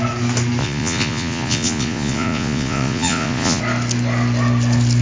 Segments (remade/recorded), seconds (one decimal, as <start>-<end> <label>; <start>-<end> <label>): 0.0-0.6 recorded; 0.6-3.6 remade; 3.6-5.0 recorded